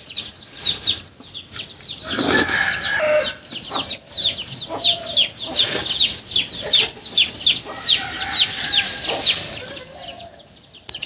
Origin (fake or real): real